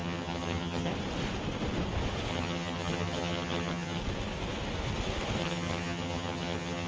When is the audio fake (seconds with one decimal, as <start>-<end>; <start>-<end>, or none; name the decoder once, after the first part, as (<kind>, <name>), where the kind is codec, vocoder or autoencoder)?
0.0-0.9 (vocoder, HiFi-GAN); 2.3-4.0; 5.4-6.9